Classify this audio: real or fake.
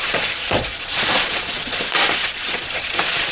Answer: fake